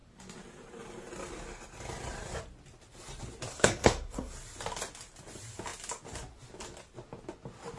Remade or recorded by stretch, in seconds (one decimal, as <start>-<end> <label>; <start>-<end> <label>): 0.0-3.5 recorded; 3.5-4.3 remade; 4.3-7.8 recorded